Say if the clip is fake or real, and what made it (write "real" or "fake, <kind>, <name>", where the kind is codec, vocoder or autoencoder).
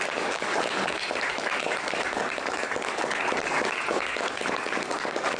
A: fake, codec, DAC